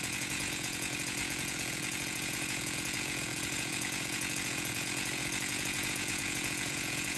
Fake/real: fake